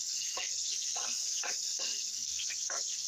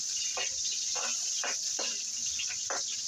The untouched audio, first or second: second